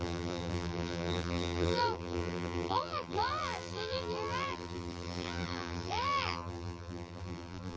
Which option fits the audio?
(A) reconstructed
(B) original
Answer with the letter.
A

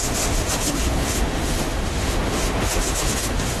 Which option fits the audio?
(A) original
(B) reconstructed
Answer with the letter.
B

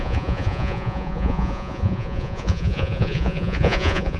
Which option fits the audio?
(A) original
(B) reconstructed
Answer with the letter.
B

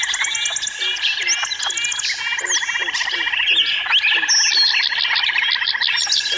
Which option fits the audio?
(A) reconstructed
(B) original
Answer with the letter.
B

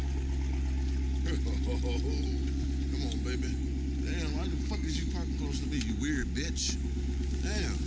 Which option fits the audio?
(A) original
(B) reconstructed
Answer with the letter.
A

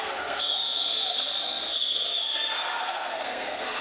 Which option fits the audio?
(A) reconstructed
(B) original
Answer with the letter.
A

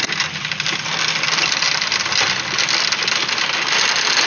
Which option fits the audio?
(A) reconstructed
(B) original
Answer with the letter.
B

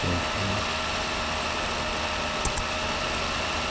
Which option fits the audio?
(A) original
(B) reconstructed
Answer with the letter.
A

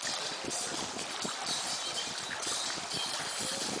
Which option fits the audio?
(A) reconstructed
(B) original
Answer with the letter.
B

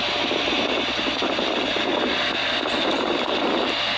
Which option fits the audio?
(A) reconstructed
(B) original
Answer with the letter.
B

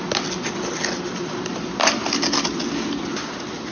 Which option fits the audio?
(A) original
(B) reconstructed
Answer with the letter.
A